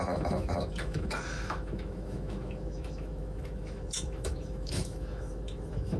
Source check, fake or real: fake